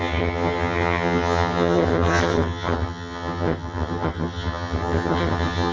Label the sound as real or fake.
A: fake